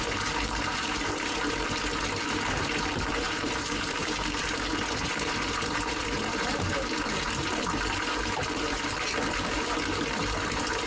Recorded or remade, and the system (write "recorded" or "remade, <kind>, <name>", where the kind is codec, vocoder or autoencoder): remade, vocoder, BigVGAN v2